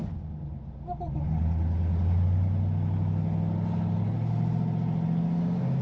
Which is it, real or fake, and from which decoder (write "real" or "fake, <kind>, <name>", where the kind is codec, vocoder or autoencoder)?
real